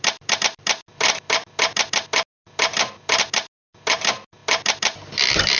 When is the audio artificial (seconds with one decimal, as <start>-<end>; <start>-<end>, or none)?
none